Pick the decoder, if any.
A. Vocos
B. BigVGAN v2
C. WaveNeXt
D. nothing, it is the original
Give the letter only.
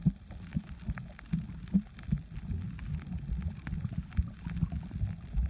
D